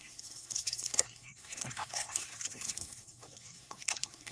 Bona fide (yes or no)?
no